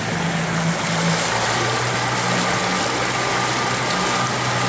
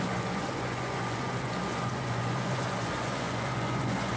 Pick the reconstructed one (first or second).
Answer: second